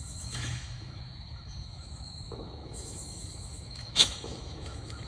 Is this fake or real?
fake